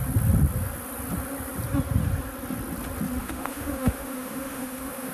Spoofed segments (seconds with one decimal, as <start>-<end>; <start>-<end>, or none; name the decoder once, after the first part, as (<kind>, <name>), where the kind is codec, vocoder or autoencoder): 3.2-5.1 (autoencoder, DAC-VAE)

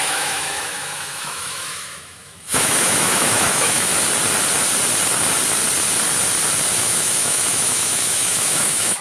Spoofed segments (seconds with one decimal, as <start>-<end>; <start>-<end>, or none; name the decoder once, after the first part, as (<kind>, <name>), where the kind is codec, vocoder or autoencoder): 0.0-3.9 (autoencoder, DAC-VAE); 6.7-9.0